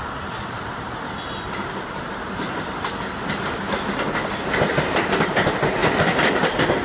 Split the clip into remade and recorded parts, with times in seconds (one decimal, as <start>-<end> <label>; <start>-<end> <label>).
0.0-5.8 recorded; 5.8-6.8 remade